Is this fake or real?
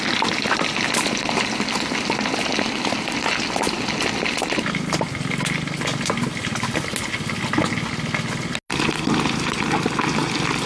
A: real